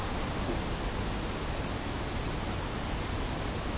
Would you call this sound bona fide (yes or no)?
yes